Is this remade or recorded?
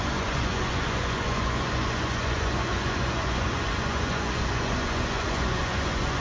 remade